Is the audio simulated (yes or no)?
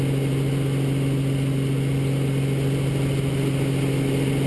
no